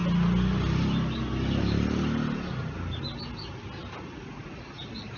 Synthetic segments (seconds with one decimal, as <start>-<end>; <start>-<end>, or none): none

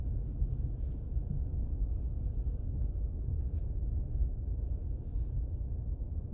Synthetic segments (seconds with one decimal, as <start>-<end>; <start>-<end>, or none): none

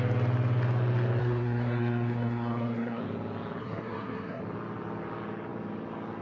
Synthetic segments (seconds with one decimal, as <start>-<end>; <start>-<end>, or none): 1.2-3.0; 3.6-4.4